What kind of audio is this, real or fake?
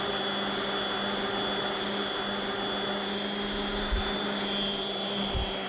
real